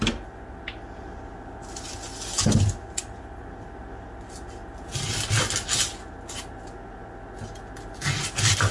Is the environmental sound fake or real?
real